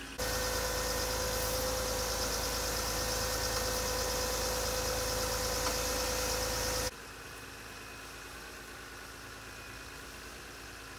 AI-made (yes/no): no